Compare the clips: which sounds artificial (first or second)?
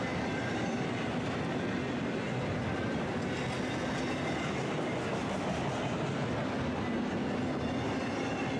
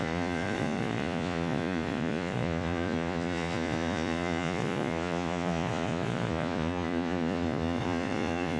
second